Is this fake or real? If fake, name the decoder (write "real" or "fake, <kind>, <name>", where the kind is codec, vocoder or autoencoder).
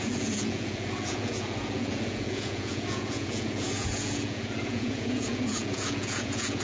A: fake, vocoder, Vocos